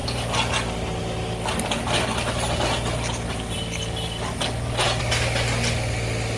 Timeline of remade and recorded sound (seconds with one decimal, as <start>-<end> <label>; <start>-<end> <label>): 0.0-6.4 recorded